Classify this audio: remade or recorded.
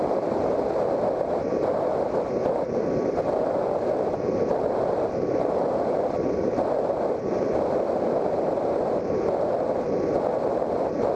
recorded